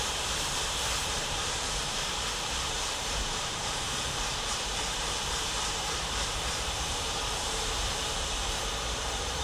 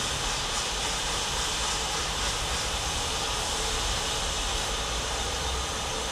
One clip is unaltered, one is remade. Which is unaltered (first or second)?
second